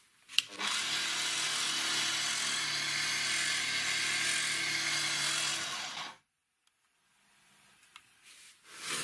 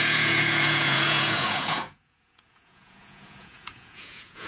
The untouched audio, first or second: first